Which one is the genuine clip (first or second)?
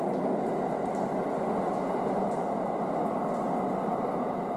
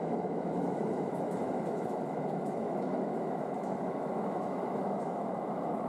first